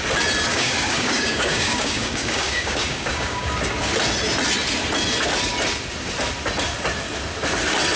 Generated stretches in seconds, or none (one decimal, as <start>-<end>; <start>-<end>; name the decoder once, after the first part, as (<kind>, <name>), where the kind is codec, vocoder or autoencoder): 0.5-3.6 (codec, DAC)

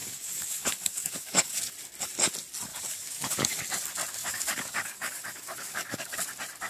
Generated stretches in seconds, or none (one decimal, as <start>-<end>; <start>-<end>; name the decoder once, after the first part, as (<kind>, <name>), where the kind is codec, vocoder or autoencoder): 0.0-1.7 (codec, DAC); 2.7-3.6; 4.2-6.2

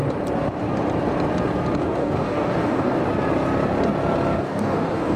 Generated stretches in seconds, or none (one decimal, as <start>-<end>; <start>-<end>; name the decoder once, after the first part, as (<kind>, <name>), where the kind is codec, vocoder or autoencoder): 1.8-3.0 (codec, DAC); 4.4-5.2

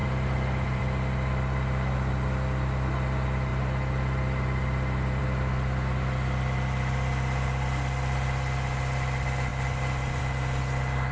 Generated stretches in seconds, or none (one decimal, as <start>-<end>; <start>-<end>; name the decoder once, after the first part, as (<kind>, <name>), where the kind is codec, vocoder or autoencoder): none

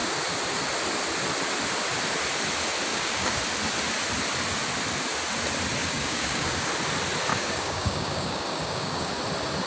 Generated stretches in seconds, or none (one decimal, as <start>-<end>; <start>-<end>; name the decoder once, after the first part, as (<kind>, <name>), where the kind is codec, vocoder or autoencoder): 2.9-3.4 (codec, DAC); 5.8-6.7; 7.3-9.1